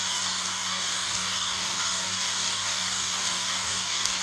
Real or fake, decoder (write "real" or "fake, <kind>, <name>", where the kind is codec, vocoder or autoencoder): fake, codec, DAC